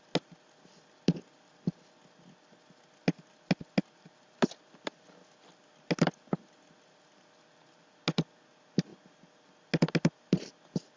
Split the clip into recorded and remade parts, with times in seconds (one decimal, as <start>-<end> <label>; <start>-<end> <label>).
0.0-11.0 recorded